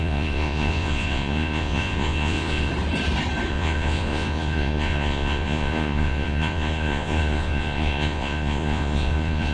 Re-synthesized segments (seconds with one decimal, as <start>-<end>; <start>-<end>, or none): 0.0-2.7; 3.5-9.5